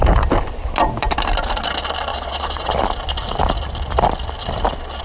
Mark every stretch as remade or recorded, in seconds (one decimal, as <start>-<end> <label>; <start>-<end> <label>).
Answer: 0.0-2.1 recorded; 2.1-2.7 remade; 2.7-5.0 recorded